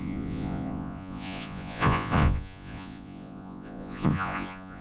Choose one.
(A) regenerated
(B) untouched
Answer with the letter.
A